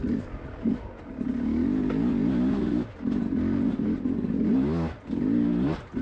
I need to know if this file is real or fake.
real